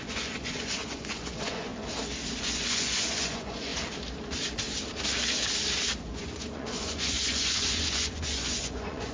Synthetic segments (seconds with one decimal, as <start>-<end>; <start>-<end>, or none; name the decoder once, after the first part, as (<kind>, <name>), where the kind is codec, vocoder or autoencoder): 0.0-1.7 (vocoder, Vocos); 2.4-3.7; 6.0-9.1